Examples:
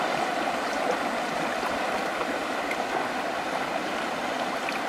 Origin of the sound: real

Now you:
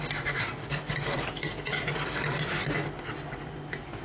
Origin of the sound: real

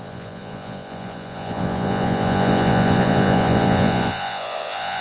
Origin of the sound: fake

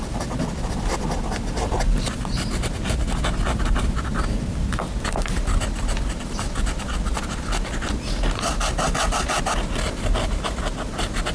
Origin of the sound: real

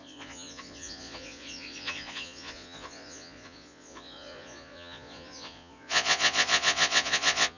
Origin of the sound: fake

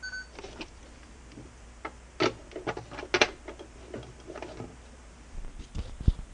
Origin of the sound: real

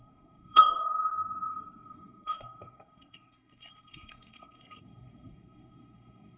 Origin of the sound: fake